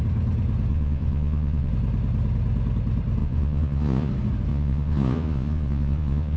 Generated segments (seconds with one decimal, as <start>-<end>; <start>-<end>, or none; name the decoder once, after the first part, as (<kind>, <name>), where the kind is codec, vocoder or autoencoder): 0.7-1.7 (vocoder, Vocos); 3.2-4.1; 4.5-6.4